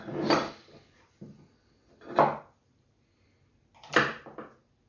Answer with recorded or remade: recorded